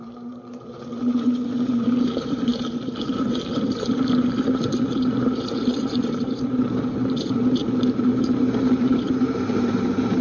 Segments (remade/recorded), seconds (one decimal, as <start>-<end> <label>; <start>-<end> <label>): 0.0-10.2 remade